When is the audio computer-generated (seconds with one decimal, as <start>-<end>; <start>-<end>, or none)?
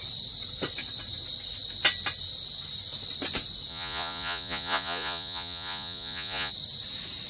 3.7-6.5